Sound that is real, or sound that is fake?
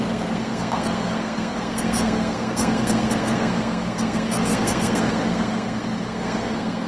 fake